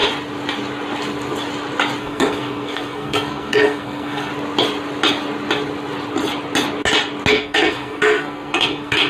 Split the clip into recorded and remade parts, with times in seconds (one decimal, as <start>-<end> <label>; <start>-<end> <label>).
0.0-2.0 recorded; 2.0-4.3 remade; 4.3-7.3 recorded; 7.3-9.1 remade